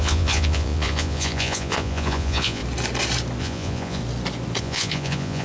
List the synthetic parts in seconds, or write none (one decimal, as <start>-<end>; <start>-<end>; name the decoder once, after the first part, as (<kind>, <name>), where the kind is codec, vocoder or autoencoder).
0.0-2.6 (vocoder, Vocos); 3.4-4.0; 4.6-5.4